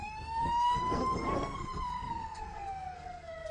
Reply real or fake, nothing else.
fake